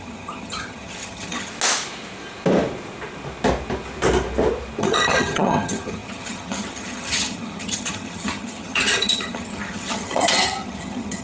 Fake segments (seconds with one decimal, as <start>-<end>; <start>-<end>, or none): 0.0-1.5; 4.8-11.2